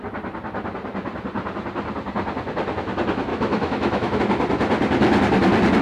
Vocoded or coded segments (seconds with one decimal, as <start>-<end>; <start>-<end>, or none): 3.3-4.2